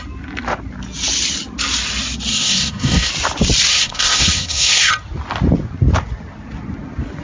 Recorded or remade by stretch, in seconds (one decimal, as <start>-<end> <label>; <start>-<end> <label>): 0.0-2.3 recorded; 2.3-3.1 remade; 3.1-3.7 recorded; 3.7-4.9 remade; 4.9-7.2 recorded